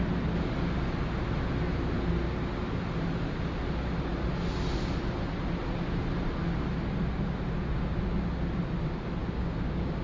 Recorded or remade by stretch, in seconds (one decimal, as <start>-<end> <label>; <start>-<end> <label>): 0.0-9.2 recorded; 9.2-10.0 remade